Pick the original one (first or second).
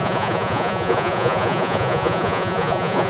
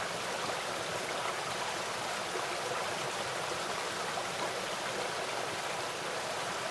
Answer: second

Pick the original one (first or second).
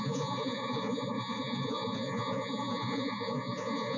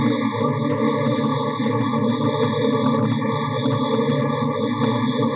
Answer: second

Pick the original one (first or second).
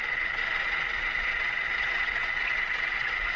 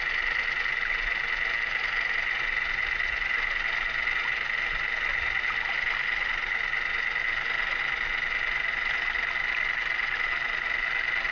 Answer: second